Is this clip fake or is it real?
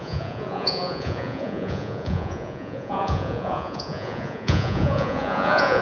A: fake